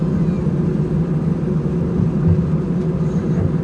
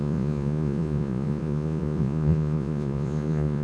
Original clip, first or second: first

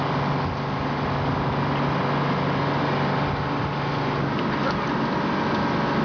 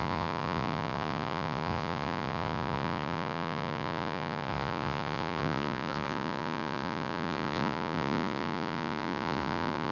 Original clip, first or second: first